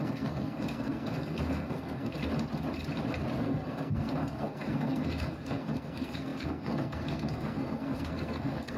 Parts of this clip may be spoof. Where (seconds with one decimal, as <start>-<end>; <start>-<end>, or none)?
0.0-2.2; 3.4-8.8